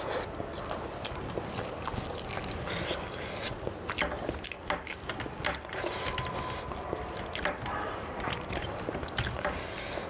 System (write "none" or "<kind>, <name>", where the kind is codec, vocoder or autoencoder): none